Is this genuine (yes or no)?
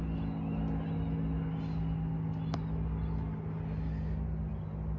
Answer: yes